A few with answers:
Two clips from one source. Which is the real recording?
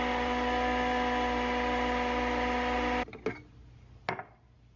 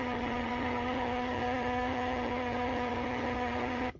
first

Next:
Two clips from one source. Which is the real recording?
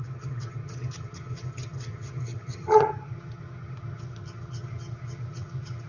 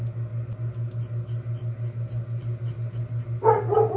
second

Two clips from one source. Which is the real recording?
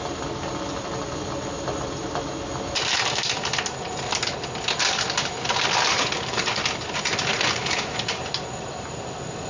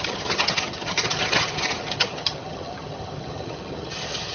first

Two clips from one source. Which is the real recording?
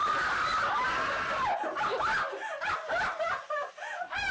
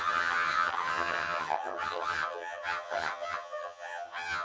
first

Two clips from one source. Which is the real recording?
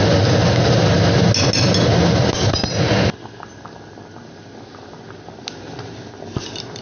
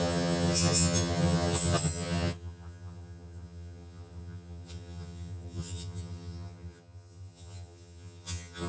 first